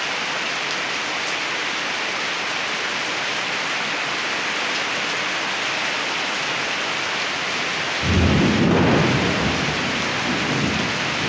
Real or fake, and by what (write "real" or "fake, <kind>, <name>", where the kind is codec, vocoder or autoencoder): real